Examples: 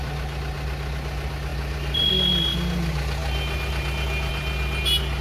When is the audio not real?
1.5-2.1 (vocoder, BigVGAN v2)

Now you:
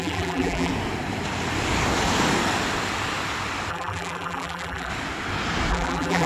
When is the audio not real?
0.0-0.7 (vocoder, BigVGAN v2); 3.7-4.9; 5.7-6.3